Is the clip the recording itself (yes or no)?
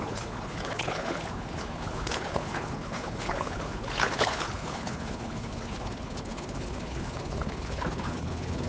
no